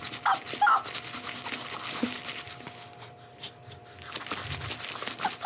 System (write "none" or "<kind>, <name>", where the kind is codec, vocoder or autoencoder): none